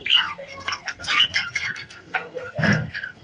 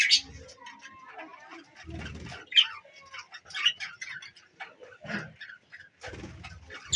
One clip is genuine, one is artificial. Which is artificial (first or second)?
first